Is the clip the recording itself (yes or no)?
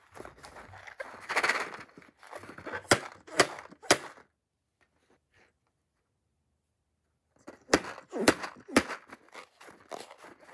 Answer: yes